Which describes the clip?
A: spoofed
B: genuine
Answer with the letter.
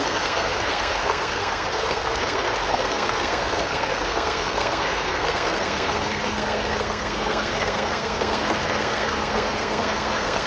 A